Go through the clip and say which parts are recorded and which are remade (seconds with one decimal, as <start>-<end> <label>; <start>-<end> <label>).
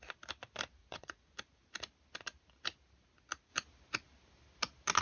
0.0-0.8 recorded; 0.8-1.3 remade; 1.3-5.0 recorded